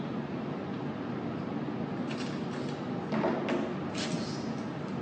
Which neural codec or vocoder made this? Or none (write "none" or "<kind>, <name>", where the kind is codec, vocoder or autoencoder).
none